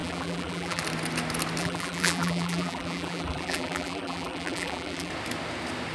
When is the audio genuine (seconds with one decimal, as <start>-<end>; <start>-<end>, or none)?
0.8-1.6; 5.1-5.9